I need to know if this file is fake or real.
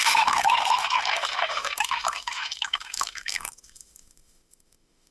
fake